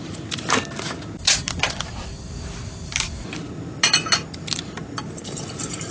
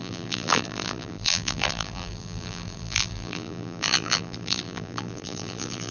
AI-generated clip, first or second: second